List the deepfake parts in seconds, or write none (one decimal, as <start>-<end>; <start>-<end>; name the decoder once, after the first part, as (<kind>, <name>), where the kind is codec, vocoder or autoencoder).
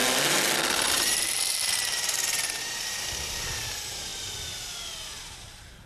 0.9-4.1 (vocoder, BigVGAN v2); 5.2-5.9